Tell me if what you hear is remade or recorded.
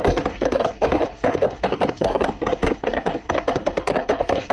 remade